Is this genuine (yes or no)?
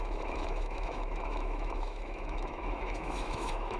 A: no